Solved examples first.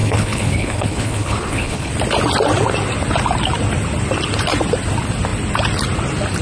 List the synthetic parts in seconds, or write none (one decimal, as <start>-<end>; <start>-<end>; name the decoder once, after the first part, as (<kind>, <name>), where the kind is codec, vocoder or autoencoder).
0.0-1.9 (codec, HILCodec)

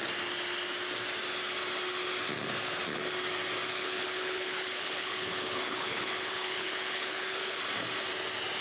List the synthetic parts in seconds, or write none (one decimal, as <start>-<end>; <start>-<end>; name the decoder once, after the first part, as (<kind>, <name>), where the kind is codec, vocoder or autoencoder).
3.7-7.6 (codec, HILCodec)

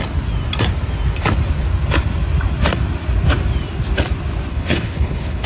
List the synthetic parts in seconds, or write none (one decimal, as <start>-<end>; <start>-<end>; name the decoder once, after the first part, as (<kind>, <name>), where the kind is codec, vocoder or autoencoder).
4.5-5.5 (codec, HILCodec)

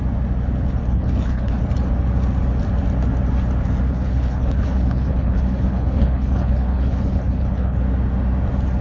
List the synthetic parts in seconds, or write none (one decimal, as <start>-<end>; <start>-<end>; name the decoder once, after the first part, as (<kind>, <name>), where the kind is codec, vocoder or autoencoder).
0.8-1.6 (codec, HILCodec); 3.9-7.8

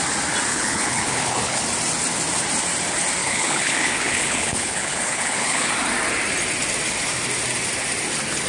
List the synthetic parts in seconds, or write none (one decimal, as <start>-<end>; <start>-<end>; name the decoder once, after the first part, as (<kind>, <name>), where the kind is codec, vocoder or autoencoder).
0.5-1.6 (codec, HILCodec); 3.2-5.7

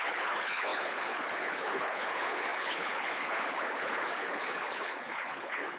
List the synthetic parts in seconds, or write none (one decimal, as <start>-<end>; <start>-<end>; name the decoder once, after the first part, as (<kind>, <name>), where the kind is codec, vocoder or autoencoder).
0.0-5.8 (codec, HILCodec)

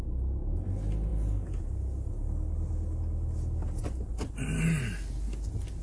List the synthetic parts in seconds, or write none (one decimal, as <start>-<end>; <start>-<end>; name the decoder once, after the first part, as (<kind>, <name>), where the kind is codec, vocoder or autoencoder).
none